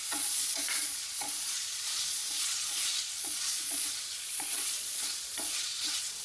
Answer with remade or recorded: remade